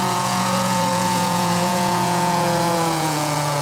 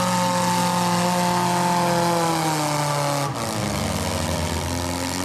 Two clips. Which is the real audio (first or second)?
second